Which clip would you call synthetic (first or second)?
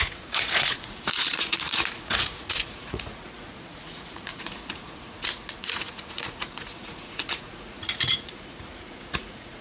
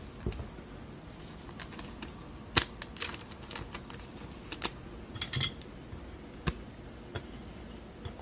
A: first